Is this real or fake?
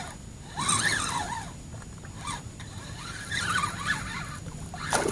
real